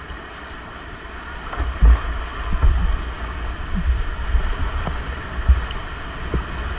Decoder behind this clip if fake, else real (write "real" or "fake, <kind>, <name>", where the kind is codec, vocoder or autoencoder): real